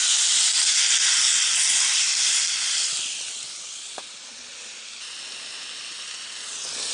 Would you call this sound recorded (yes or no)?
yes